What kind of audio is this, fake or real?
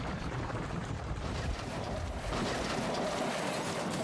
fake